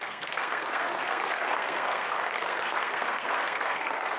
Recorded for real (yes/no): no